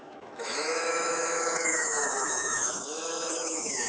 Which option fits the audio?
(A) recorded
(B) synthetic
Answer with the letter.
B